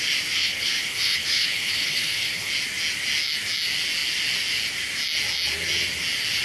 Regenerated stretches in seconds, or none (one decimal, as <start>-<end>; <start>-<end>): 0.4-2.5